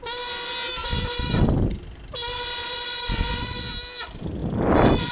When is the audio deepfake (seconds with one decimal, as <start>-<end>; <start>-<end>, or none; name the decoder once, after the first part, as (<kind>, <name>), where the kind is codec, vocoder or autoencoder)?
2.6-3.3 (vocoder, BigVGAN v2); 4.4-5.1

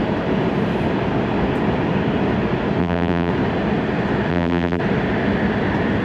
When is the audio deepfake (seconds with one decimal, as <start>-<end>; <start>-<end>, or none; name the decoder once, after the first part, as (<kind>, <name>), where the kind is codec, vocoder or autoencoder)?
2.8-3.3 (vocoder, BigVGAN v2); 4.3-4.8

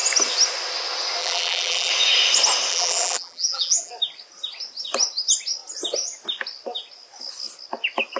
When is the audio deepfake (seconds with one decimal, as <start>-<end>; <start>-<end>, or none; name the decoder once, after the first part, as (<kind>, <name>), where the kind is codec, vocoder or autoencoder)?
1.2-1.9 (vocoder, BigVGAN v2); 2.7-3.9

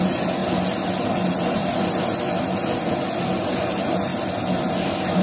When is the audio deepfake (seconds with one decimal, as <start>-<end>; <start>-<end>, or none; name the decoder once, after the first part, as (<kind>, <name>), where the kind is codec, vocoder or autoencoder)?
0.0-0.4 (vocoder, BigVGAN v2); 1.0-1.6; 2.8-4.1; 4.7-5.2

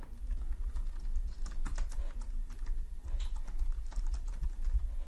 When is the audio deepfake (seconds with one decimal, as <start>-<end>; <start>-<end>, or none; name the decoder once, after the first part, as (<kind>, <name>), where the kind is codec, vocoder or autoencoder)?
1.6-5.1 (vocoder, BigVGAN v2)

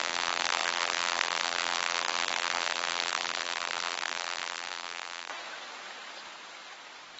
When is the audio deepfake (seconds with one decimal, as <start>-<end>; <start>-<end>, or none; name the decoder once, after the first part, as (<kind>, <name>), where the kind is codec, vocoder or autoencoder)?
0.0-5.3 (vocoder, BigVGAN v2)

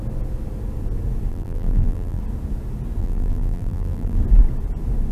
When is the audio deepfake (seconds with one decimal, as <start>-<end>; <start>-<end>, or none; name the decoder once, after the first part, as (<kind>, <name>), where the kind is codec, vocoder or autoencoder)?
1.3-2.2 (vocoder, BigVGAN v2); 3.0-4.2